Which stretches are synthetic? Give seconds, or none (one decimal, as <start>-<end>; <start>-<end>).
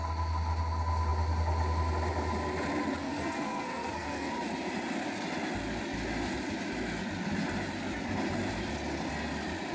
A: 3.0-4.3